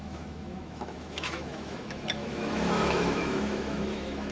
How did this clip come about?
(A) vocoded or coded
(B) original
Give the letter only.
A